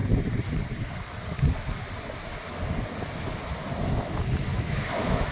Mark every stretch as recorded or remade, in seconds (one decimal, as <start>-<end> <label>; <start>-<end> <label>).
0.0-4.5 recorded; 4.5-5.3 remade